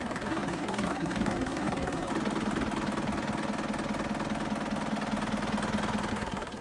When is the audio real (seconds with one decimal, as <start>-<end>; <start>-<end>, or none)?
2.1-6.1